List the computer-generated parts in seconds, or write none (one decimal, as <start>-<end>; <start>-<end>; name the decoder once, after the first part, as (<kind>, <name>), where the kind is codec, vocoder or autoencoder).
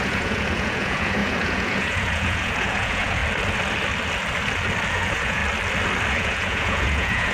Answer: 0.0-3.2 (vocoder, Vocos); 4.9-5.4; 6.1-7.3